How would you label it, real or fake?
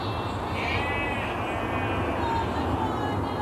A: real